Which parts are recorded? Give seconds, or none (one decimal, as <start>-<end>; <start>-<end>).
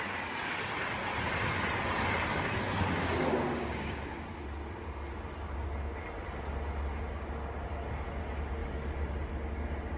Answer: 0.0-3.0; 4.2-10.0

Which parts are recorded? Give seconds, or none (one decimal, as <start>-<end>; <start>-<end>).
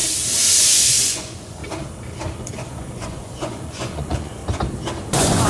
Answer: 0.0-0.6; 1.6-2.4; 4.4-5.1